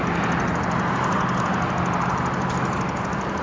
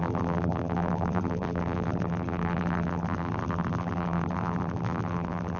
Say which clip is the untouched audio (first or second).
first